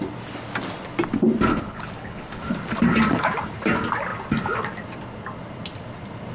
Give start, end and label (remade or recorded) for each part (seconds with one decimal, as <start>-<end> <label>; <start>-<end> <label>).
0.0-1.5 recorded; 1.5-2.4 remade; 2.4-6.3 recorded